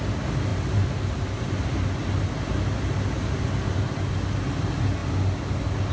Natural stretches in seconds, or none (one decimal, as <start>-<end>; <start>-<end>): 0.0-5.9